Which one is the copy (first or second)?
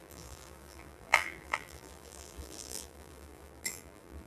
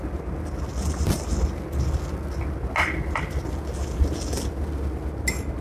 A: first